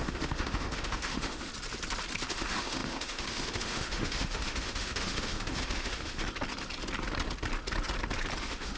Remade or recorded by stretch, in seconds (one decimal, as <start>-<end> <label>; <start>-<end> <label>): 0.0-1.5 remade; 1.5-2.3 recorded; 2.3-6.2 remade; 6.2-8.4 recorded; 8.4-8.8 remade